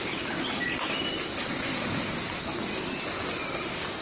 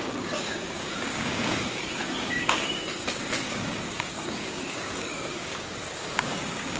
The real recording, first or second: first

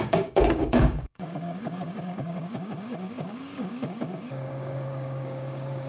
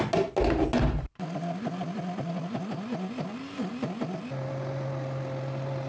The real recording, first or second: second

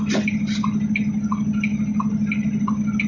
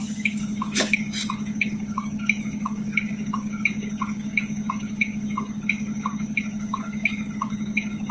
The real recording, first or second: first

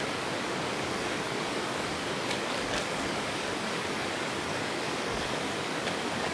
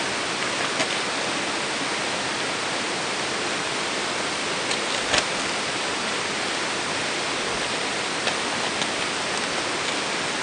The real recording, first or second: second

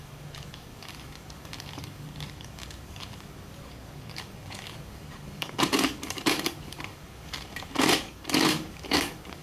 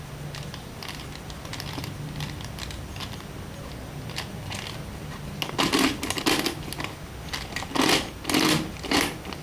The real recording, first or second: second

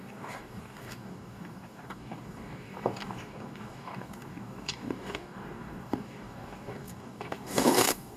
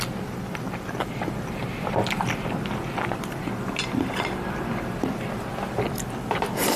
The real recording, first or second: second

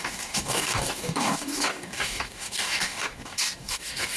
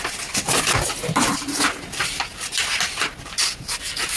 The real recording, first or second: second